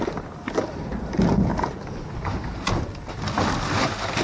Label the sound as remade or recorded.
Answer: recorded